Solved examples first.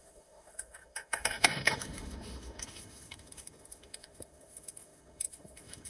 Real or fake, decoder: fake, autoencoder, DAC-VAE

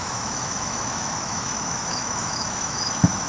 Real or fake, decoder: fake, autoencoder, DAC-VAE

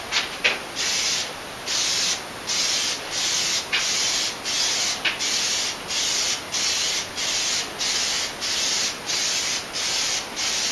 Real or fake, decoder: real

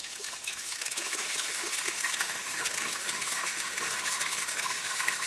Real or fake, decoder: fake, autoencoder, DAC-VAE